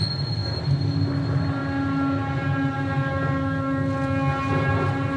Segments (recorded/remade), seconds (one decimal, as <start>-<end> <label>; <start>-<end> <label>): 0.0-5.2 recorded